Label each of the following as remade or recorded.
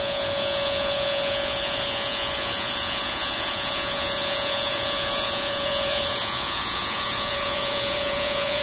remade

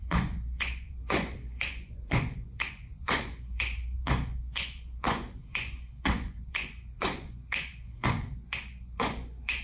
remade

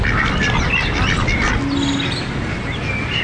recorded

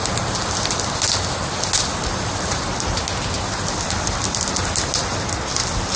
recorded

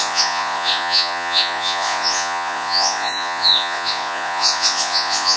remade